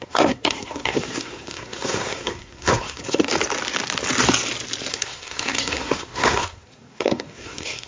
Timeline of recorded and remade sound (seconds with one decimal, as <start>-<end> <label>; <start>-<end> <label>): 0.0-3.3 remade; 3.3-4.9 recorded; 4.9-7.9 remade